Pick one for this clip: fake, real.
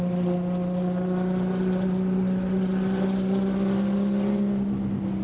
real